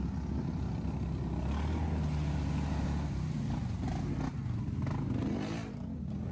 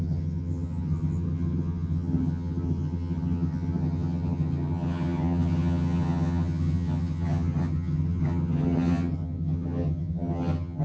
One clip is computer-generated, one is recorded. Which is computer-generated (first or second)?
second